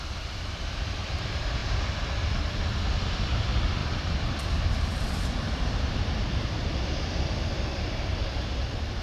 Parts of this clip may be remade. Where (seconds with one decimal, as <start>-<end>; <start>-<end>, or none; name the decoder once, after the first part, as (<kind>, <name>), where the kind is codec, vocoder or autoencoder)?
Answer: 0.0-1.6 (vocoder, BigVGAN v2); 2.2-9.0